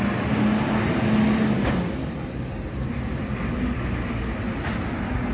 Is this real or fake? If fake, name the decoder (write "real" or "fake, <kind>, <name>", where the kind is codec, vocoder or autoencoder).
real